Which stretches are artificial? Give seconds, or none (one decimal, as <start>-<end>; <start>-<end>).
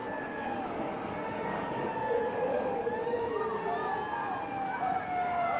0.0-3.4